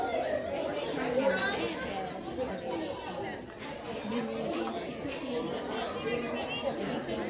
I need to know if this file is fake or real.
real